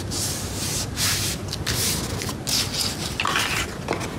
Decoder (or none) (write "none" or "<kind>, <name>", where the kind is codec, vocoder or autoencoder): none